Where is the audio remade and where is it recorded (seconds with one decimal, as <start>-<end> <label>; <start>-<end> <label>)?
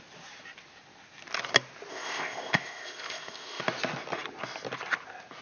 0.0-1.9 recorded; 1.9-3.6 remade; 3.6-5.4 recorded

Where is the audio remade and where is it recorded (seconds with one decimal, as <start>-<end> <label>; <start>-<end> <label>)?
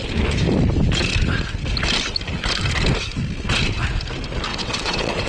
0.0-4.5 recorded; 4.5-5.3 remade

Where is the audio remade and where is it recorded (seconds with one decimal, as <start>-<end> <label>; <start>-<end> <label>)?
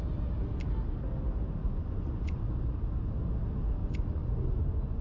0.0-1.6 recorded; 1.6-2.4 remade; 2.4-3.8 recorded; 3.8-5.0 remade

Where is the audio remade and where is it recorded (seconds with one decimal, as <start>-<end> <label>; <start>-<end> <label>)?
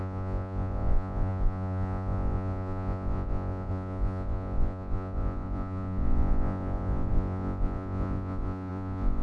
0.0-9.2 remade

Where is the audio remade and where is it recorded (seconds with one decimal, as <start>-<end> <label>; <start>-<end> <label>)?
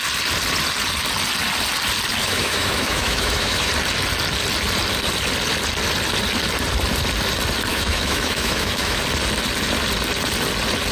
0.0-2.2 recorded; 2.2-3.7 remade; 3.7-7.7 recorded; 7.7-9.0 remade; 9.0-10.9 recorded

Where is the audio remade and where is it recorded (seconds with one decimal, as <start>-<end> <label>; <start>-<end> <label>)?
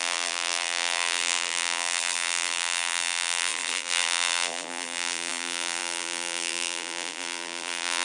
0.0-8.0 remade